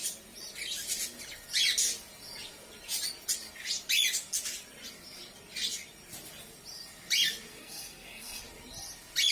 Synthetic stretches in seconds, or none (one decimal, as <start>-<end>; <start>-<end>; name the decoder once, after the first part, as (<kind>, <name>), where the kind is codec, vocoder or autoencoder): 7.5-8.4 (codec, SNAC)